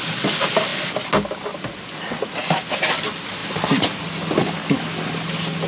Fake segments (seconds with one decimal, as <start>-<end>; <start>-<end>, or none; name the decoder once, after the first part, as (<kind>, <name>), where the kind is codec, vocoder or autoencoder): none